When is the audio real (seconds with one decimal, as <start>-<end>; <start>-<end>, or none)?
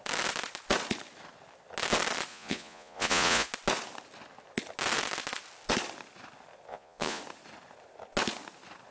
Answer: 0.0-2.3; 3.5-6.7; 7.2-8.9